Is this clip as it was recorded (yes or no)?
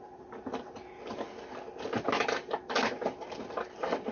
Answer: yes